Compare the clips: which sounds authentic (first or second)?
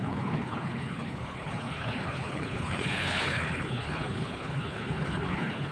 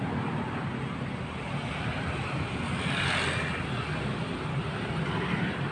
second